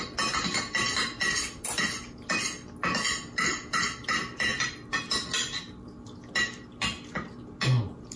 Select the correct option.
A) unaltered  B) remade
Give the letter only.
A